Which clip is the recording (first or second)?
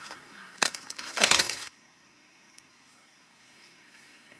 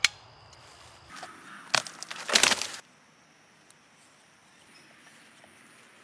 second